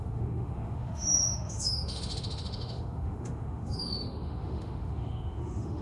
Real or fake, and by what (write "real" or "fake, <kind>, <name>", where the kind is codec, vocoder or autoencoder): fake, autoencoder, DAC-VAE